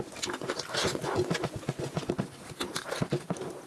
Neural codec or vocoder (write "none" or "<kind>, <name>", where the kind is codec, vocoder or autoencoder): none